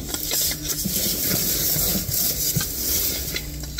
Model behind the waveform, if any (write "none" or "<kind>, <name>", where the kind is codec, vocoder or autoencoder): none